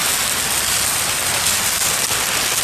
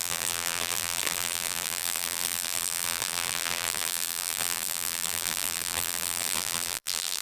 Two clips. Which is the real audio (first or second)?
first